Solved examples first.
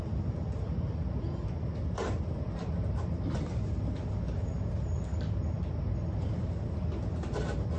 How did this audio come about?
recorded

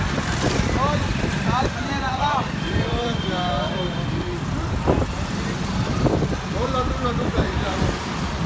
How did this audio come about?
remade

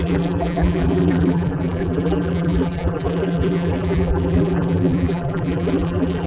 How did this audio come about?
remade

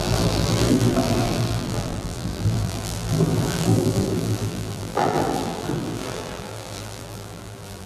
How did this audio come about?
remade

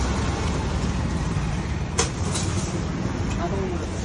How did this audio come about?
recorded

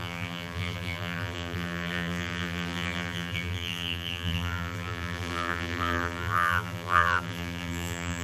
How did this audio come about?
remade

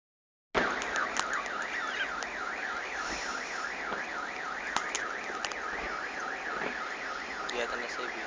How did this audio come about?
recorded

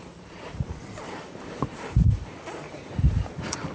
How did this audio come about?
remade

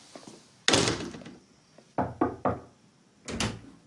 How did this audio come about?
recorded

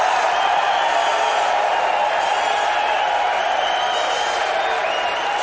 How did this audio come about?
recorded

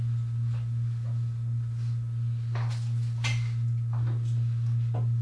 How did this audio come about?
recorded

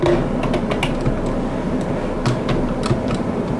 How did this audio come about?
recorded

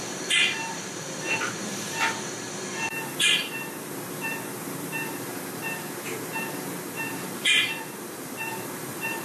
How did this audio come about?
remade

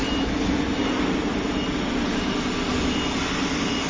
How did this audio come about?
recorded